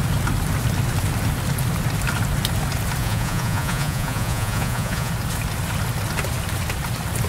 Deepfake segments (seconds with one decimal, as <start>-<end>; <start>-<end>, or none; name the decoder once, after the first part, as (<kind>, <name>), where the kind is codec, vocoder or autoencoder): 3.0-5.1 (vocoder, Vocos)